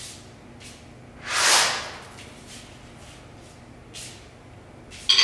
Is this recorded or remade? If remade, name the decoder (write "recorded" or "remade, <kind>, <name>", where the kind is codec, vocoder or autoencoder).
recorded